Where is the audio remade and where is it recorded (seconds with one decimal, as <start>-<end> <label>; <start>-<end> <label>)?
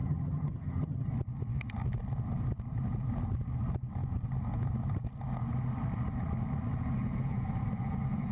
0.0-1.1 remade; 1.1-8.3 recorded